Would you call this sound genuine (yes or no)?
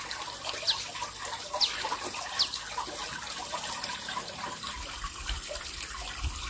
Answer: yes